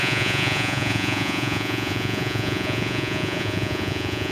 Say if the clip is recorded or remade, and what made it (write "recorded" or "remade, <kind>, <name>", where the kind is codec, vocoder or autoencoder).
remade, vocoder, Vocos